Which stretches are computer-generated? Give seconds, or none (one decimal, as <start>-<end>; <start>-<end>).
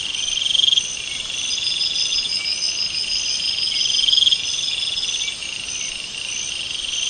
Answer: none